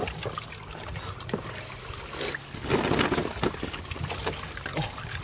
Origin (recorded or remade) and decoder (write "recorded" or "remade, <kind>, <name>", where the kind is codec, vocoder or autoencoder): recorded